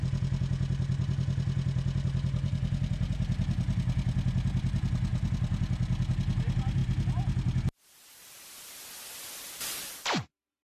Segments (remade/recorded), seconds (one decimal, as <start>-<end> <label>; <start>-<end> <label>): 0.0-10.7 recorded